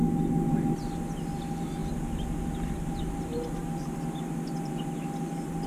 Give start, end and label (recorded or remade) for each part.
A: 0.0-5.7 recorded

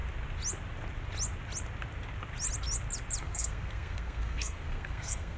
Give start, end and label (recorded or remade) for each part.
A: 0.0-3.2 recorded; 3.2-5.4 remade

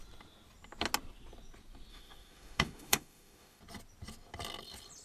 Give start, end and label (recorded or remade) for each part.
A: 0.0-1.9 recorded; 1.9-3.6 remade; 3.6-5.0 recorded